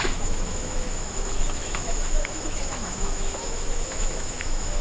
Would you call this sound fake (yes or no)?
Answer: yes